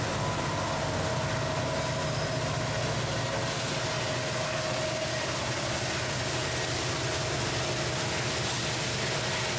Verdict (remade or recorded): recorded